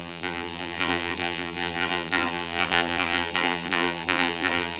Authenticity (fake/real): fake